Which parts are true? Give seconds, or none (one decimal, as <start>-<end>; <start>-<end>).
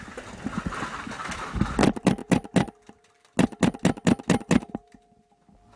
0.0-5.8